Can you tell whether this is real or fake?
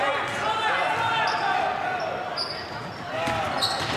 real